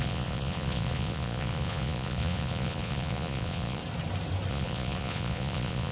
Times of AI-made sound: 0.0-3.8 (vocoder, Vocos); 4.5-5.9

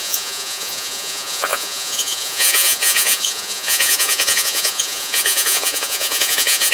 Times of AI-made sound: 0.0-6.7 (vocoder, Vocos)

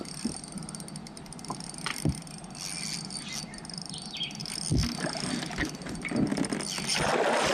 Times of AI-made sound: none

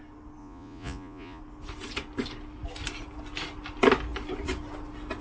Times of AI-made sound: 0.4-1.4 (vocoder, Vocos)